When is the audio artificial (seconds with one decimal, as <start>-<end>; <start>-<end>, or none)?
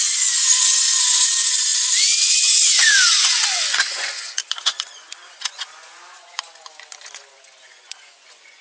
0.0-8.6